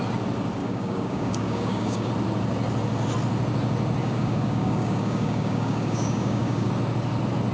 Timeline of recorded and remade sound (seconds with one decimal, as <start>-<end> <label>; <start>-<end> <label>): 0.0-0.6 recorded; 0.6-2.1 remade; 2.1-4.0 recorded; 4.0-6.7 remade; 6.7-7.5 recorded